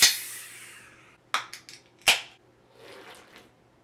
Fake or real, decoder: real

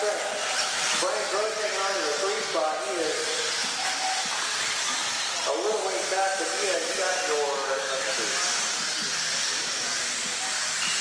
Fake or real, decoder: real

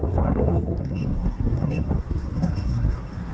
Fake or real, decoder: fake, codec, SNAC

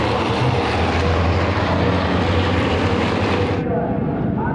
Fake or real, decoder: real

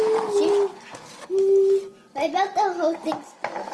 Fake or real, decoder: real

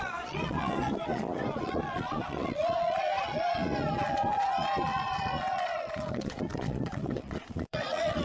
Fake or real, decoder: fake, vocoder, Vocos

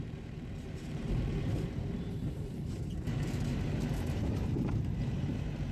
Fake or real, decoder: fake, vocoder, BigVGAN v2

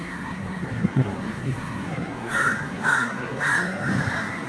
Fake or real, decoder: fake, codec, SNAC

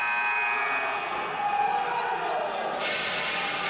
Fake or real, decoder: real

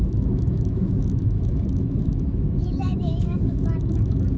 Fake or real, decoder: fake, autoencoder, DAC-VAE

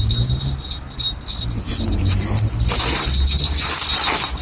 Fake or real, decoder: real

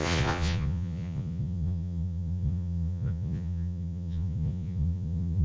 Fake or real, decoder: fake, vocoder, Vocos